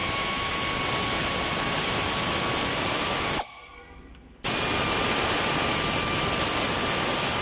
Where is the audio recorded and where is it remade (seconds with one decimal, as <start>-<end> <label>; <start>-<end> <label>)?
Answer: 0.0-0.5 remade; 0.5-7.4 recorded